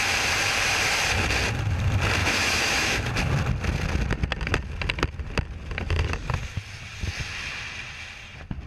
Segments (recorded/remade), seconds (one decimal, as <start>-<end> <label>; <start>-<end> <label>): 0.0-2.2 recorded; 2.2-3.1 remade; 3.1-8.7 recorded

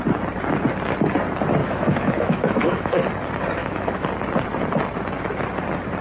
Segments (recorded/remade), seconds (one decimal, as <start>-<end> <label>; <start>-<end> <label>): 0.0-1.6 recorded; 1.6-3.0 remade; 3.0-3.6 recorded; 3.6-4.1 remade; 4.1-6.0 recorded

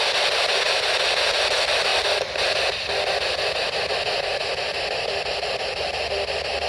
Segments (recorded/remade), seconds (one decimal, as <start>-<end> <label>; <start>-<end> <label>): 0.0-6.7 recorded

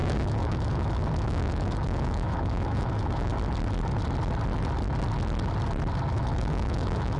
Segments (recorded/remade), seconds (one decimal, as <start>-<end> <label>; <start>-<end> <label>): 0.0-3.3 remade; 3.3-6.1 recorded; 6.1-7.2 remade

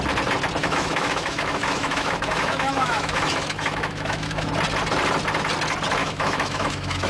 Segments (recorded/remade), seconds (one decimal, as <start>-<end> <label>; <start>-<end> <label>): 0.0-0.6 recorded; 0.6-4.5 remade; 4.5-6.0 recorded; 6.0-7.1 remade